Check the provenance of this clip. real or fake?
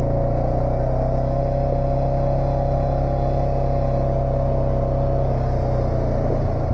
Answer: real